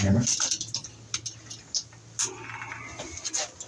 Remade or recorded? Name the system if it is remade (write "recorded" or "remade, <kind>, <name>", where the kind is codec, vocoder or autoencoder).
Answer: recorded